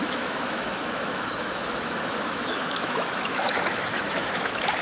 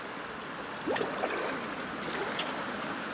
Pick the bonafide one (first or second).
second